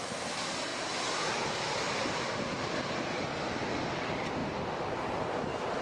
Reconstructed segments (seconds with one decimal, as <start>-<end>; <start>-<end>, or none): none

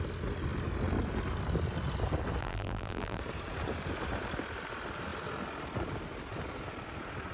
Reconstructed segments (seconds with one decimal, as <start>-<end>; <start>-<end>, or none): 2.4-3.2